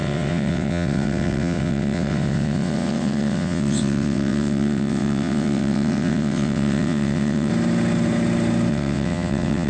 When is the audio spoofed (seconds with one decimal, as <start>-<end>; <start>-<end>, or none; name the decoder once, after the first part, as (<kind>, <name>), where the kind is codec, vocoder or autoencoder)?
0.0-7.5 (vocoder, WaveNeXt); 8.7-9.7